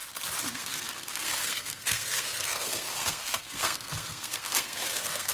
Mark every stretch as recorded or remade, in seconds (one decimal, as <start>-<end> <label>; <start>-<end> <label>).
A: 0.0-0.5 recorded; 0.5-5.3 remade

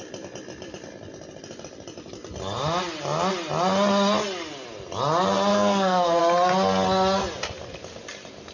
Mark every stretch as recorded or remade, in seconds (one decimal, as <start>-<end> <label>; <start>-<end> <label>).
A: 0.0-5.5 recorded; 5.5-6.2 remade; 6.2-8.5 recorded

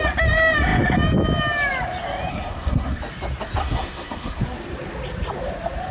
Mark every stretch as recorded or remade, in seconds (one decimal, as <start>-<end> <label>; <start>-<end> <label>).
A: 0.0-2.3 recorded; 2.3-3.0 remade; 3.0-3.6 recorded; 3.6-4.4 remade; 4.4-5.9 recorded